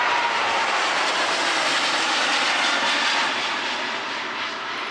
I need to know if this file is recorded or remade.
recorded